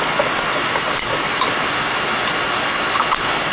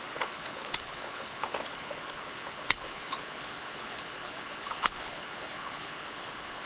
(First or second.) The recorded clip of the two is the first